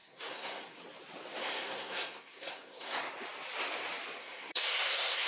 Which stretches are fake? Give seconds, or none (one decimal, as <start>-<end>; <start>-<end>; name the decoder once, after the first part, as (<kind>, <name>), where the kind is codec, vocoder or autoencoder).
0.0-0.8 (codec, SNAC); 1.4-3.0; 4.2-5.3